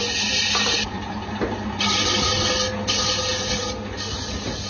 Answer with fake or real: real